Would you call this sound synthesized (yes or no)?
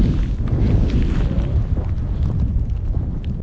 no